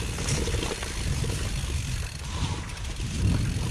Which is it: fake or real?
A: real